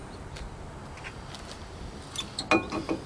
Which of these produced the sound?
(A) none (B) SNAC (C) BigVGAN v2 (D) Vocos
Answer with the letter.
A